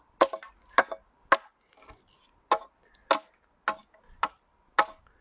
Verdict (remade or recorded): recorded